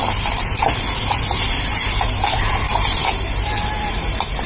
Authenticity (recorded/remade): recorded